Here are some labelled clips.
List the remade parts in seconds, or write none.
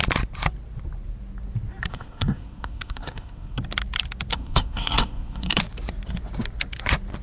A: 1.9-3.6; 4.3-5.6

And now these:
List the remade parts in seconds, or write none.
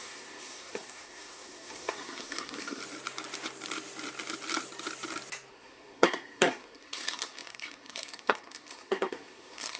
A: 0.0-2.8; 5.5-9.8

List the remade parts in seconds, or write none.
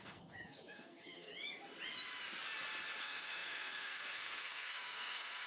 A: 0.0-1.3; 3.0-5.5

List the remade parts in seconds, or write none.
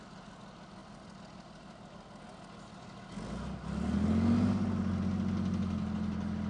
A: none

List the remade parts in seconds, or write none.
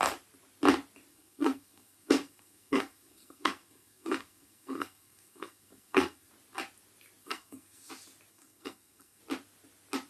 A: 1.1-6.3; 7.2-7.9; 8.3-9.2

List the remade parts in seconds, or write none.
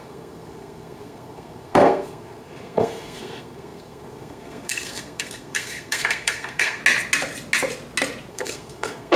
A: 0.0-6.8; 8.3-9.2